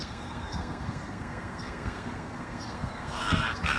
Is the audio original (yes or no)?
no